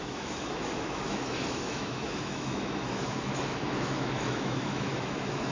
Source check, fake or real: fake